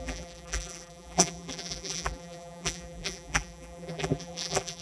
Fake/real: fake